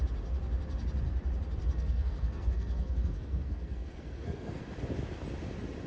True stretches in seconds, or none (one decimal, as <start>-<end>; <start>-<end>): 0.0-1.6; 4.6-5.9